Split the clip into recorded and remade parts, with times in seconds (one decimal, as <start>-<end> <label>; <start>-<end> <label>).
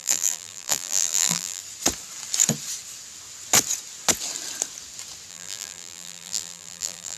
0.0-1.6 remade; 1.6-5.3 recorded; 5.3-7.2 remade